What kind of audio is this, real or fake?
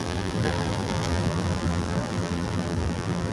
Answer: fake